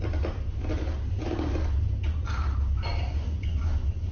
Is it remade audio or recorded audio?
recorded